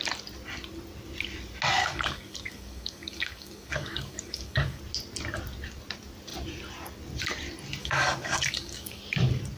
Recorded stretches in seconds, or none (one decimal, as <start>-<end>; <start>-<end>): 0.0-1.8; 4.8-7.8; 9.0-9.6